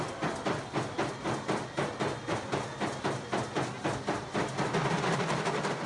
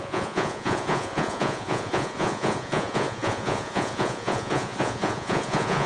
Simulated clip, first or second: second